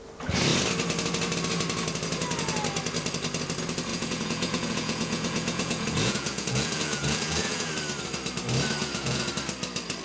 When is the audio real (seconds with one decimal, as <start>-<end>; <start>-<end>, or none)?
0.0-3.9; 7.7-8.8; 9.3-10.0